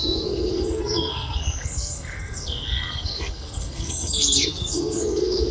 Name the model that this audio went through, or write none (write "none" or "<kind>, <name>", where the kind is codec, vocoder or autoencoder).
codec, SNAC